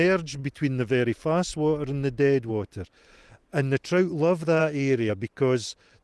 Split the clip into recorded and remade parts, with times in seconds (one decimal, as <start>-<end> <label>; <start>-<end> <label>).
0.0-4.6 recorded; 4.6-5.1 remade; 5.1-6.0 recorded